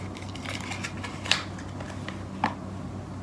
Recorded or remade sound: recorded